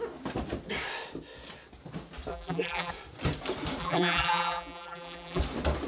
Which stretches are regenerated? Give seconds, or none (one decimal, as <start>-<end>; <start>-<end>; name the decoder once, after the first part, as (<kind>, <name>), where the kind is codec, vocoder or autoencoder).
2.3-2.9 (vocoder, BigVGAN v2); 3.8-5.4